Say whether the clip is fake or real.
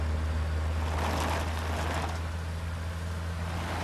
real